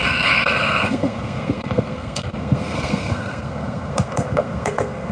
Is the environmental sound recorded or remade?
remade